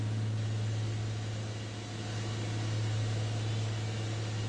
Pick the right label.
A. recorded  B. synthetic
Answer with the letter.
A